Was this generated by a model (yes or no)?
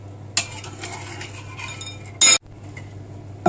no